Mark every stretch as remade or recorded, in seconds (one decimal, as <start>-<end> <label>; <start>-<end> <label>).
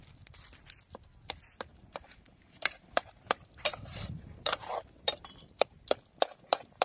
0.0-1.7 recorded; 1.7-5.8 remade; 5.8-6.8 recorded